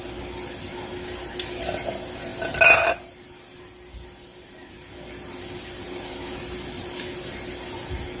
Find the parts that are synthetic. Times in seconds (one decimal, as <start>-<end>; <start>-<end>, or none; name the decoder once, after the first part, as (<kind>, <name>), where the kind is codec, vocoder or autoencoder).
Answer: none